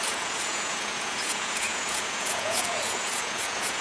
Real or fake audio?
fake